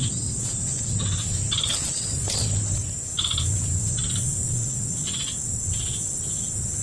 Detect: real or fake real